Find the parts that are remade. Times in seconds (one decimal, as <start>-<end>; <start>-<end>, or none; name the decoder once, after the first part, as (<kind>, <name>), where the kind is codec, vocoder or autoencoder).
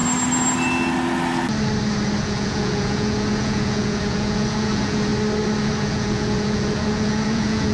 2.2-5.1 (vocoder, Vocos); 5.6-7.7